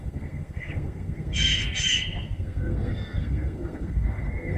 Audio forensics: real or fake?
fake